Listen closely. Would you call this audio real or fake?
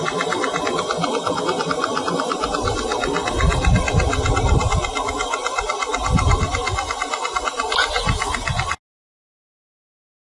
real